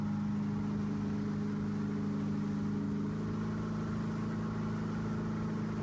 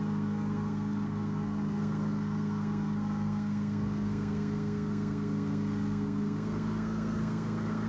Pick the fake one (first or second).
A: second